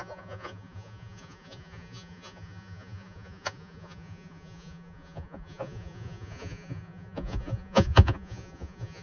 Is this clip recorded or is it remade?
remade